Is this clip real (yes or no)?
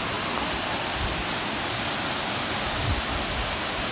yes